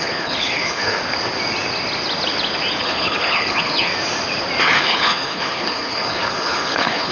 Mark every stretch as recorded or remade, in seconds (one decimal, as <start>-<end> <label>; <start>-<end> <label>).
0.0-1.0 remade; 1.0-2.8 recorded; 2.8-3.9 remade; 3.9-4.6 recorded; 4.6-7.1 remade